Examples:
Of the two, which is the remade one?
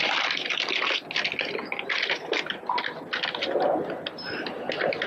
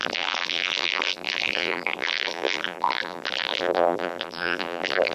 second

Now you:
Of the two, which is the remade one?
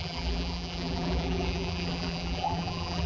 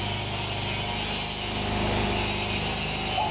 first